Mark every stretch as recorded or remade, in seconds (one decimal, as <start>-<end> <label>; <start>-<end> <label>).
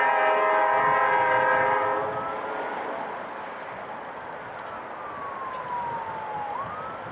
0.0-7.1 recorded